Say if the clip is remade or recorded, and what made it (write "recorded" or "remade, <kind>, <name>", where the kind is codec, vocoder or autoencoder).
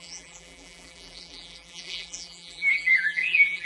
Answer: remade, vocoder, BigVGAN v2